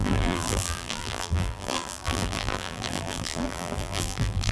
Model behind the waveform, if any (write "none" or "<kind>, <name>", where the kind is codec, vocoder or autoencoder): vocoder, BigVGAN v2